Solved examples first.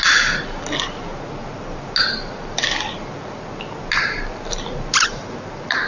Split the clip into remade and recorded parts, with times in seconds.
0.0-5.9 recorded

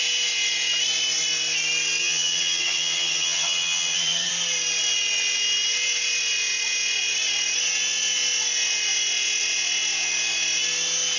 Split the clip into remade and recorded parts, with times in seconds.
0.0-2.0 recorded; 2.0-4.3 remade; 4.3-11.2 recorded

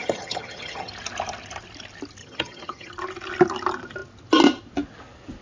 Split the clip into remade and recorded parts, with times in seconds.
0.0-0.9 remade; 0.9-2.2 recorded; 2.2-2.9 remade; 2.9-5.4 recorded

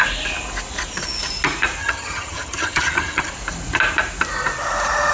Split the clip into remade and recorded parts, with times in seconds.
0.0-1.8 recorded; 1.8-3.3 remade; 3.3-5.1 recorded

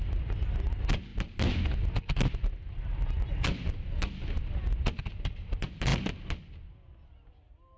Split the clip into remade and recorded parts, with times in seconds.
0.0-7.8 recorded

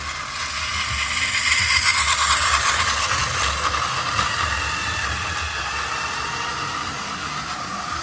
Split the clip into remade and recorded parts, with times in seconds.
0.0-8.0 recorded